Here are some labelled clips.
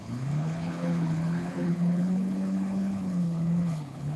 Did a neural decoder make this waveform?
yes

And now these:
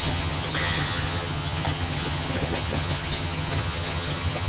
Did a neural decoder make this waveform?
yes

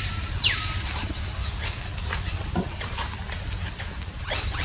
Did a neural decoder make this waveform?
no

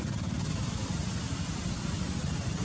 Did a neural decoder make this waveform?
no